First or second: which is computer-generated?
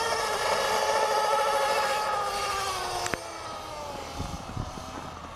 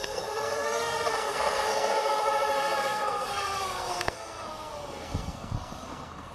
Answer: second